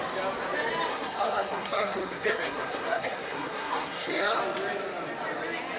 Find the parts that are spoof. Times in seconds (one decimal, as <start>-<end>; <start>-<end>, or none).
0.9-4.4

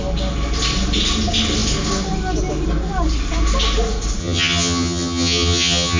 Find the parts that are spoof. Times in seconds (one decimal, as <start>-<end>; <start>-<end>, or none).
4.2-6.0

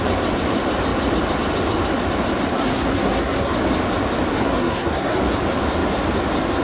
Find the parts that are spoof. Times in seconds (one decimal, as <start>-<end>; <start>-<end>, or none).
2.5-3.5; 4.3-5.2

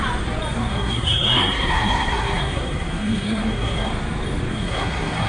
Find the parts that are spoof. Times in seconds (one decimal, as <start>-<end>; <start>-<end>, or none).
0.7-3.9; 4.5-5.3

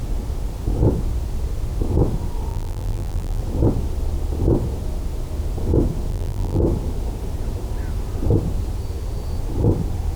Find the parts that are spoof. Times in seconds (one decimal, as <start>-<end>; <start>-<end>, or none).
2.5-3.4; 6.1-6.6